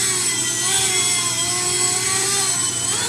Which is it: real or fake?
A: real